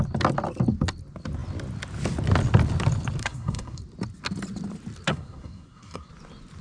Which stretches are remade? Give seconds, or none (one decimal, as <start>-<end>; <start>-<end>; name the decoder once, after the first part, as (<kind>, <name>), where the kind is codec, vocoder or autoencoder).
3.2-3.8 (codec, SNAC); 5.1-6.1